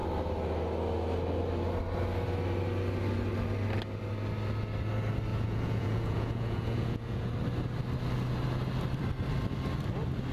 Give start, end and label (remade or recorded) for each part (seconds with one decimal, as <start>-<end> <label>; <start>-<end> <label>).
0.0-5.3 recorded; 5.3-7.3 remade; 7.3-10.3 recorded